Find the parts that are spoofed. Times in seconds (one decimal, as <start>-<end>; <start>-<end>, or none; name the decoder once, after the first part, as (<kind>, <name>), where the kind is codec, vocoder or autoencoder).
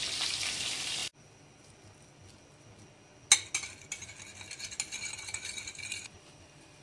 0.0-1.0 (vocoder, BigVGAN v2); 5.1-6.8